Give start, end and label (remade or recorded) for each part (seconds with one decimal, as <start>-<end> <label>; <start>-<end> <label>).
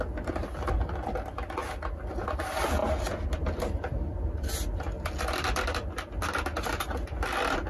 0.0-7.7 recorded